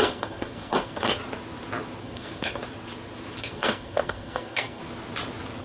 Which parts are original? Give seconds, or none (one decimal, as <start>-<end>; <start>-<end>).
1.2-2.0; 2.6-3.4; 4.8-5.6